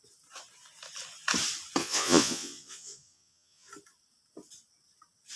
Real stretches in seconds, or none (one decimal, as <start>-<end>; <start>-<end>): 0.0-1.8; 3.7-5.4